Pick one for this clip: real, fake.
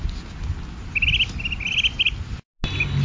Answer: real